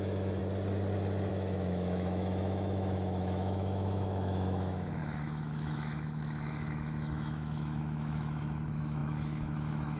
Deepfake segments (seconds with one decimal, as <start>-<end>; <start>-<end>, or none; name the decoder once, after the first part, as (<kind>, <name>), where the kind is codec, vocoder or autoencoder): 0.0-0.4 (autoencoder, DAC-VAE); 1.3-10.0